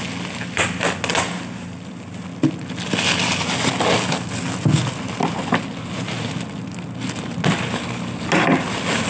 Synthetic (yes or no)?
no